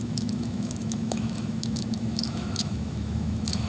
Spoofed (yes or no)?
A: yes